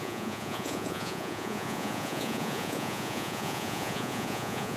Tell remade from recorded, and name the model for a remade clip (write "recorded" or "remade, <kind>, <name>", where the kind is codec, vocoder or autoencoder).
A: remade, vocoder, Vocos